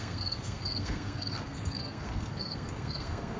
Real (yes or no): no